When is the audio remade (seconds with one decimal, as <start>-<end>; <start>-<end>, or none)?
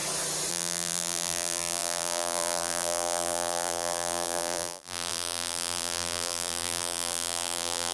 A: 0.5-7.9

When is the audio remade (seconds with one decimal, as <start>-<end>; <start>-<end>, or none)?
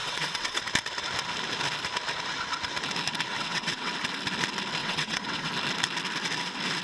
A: 0.0-0.6; 3.3-3.9; 4.8-5.5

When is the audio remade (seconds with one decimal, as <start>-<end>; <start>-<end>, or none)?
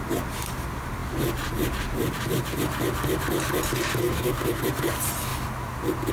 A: 4.0-4.6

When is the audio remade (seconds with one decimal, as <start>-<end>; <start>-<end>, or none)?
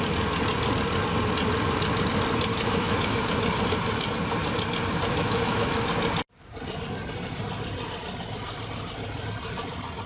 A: 2.5-3.2; 5.1-5.7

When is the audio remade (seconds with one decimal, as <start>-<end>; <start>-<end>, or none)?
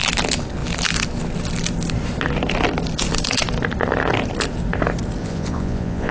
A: 5.2-6.1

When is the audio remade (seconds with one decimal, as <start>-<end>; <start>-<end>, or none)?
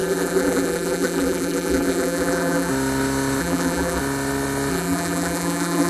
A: 0.0-2.7; 3.4-4.0; 4.7-5.9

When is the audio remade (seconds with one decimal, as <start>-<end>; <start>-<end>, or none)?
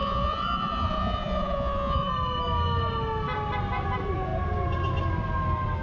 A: 0.0-2.1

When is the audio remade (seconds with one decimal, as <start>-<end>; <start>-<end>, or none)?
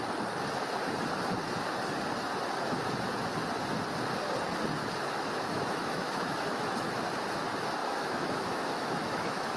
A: 4.8-6.9; 7.8-9.6